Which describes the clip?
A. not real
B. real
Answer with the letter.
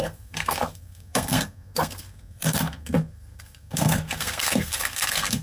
A